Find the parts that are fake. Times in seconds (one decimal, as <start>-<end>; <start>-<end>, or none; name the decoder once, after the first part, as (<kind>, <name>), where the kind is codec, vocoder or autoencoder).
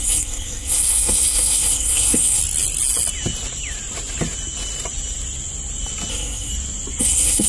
0.0-2.4 (codec, SNAC); 6.1-6.5; 7.0-7.5